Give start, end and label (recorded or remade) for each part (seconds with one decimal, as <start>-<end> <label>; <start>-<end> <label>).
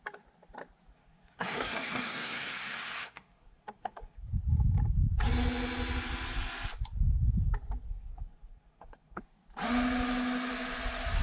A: 0.0-0.9 recorded; 0.9-4.3 remade; 4.3-8.1 recorded; 8.1-9.2 remade; 9.2-11.2 recorded